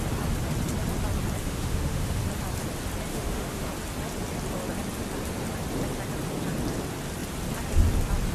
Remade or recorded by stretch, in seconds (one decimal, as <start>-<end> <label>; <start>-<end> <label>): 0.0-1.4 recorded; 1.4-2.2 remade; 2.2-3.1 recorded; 3.1-3.7 remade; 3.7-8.3 recorded